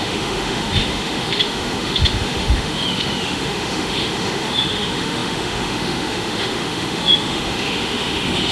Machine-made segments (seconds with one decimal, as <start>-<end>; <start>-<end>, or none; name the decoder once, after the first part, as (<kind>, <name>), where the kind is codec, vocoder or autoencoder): 0.0-8.5 (autoencoder, DAC-VAE)